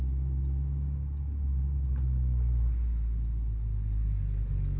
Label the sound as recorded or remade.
recorded